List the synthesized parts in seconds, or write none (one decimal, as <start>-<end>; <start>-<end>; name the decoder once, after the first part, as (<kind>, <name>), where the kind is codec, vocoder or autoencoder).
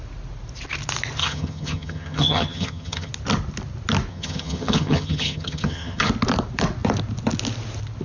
1.2-3.1 (vocoder, HiFi-GAN); 4.1-6.1